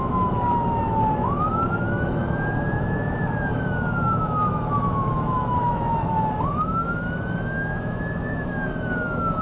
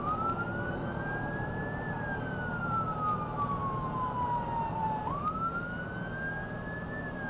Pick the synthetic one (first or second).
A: first